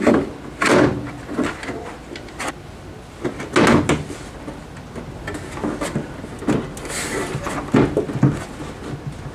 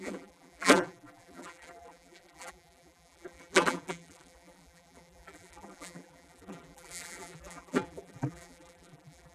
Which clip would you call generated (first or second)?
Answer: second